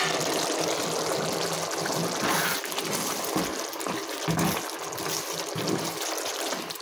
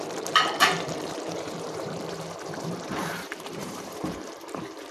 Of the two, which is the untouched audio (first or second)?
first